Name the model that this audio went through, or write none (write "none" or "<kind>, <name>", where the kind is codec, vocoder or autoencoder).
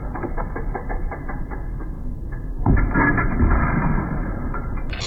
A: none